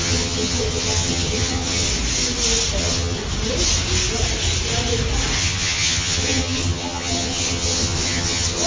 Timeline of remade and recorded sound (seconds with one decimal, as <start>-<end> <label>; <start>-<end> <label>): 0.0-1.9 remade; 1.9-2.8 recorded; 2.8-3.2 remade; 3.2-5.4 recorded; 5.4-8.7 remade

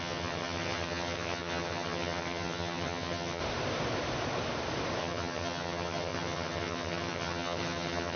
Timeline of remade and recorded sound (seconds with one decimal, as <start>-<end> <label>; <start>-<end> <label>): 0.0-3.4 remade; 3.4-5.0 recorded; 5.0-8.2 remade

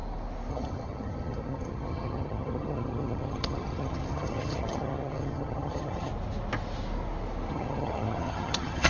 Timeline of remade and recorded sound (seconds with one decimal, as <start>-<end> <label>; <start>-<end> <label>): 0.0-0.5 recorded; 0.5-6.1 remade; 6.1-7.5 recorded; 7.5-8.9 remade

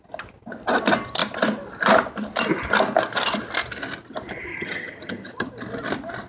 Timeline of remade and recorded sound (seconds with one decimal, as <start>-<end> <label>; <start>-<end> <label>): 0.0-4.5 recorded; 4.5-5.5 remade; 5.5-6.3 recorded

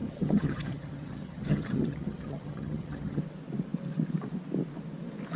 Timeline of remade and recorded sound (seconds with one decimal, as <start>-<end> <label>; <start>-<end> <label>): 0.0-3.2 remade; 3.2-5.4 recorded

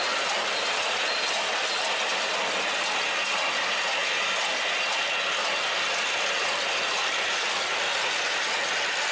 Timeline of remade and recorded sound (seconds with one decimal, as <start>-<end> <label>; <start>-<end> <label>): 0.0-9.1 recorded

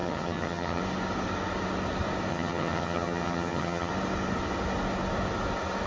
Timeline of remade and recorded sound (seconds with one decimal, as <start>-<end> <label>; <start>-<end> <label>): 0.0-0.8 remade; 0.8-2.3 recorded; 2.3-3.9 remade; 3.9-5.9 recorded

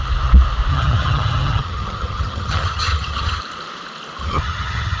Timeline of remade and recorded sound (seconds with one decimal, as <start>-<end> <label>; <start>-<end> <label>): 0.0-0.7 recorded; 0.7-3.4 remade; 3.4-4.2 recorded; 4.2-5.0 remade